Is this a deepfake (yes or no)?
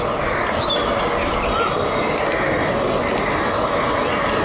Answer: no